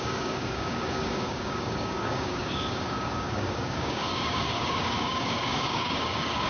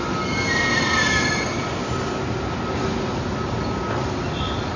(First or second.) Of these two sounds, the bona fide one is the second